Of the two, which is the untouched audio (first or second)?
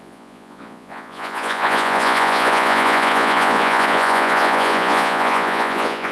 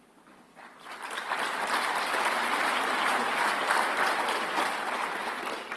second